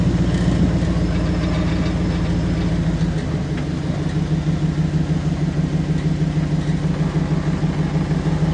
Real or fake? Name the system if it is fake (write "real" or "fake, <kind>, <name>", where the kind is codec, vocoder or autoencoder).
real